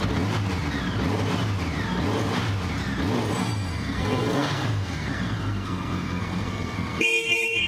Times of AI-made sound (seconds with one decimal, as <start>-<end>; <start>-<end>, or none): 3.4-7.7